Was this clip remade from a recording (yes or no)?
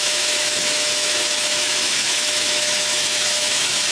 yes